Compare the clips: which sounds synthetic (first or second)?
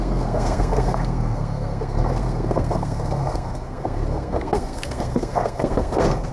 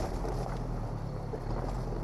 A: first